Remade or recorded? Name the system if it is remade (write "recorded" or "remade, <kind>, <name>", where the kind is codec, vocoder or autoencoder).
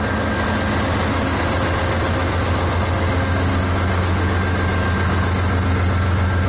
recorded